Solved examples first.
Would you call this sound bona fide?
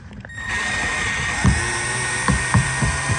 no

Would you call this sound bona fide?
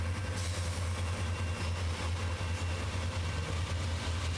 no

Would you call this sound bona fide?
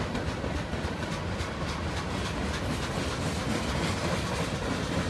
yes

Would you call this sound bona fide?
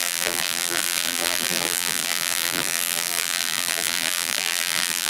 no